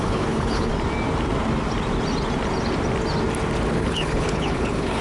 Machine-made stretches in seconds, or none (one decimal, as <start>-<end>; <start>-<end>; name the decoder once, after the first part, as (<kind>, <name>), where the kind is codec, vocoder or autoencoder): 0.0-0.7 (codec, HILCodec); 3.7-5.0